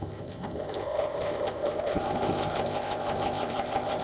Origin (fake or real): fake